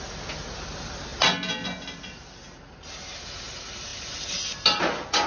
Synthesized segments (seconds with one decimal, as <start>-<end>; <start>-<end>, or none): none